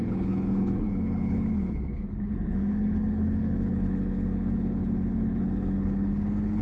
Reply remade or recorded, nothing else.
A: remade